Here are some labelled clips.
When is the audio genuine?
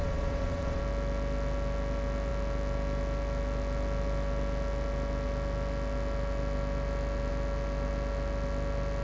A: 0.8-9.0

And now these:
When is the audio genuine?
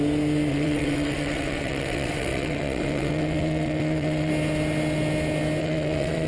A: 0.0-0.5; 4.3-5.6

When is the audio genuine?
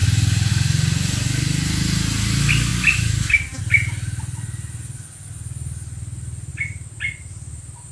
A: 0.0-7.9